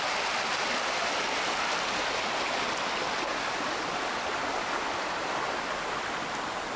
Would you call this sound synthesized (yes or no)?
no